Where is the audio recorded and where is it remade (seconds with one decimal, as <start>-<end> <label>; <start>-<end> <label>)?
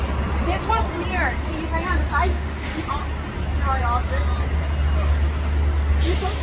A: 0.0-2.3 recorded; 2.3-2.8 remade; 2.8-6.4 recorded